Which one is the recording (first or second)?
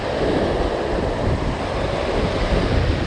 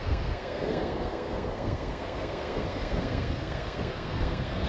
first